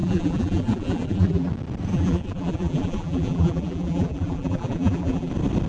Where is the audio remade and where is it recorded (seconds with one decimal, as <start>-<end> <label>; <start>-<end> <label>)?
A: 0.0-1.5 remade; 1.5-1.9 recorded; 1.9-5.3 remade; 5.3-5.7 recorded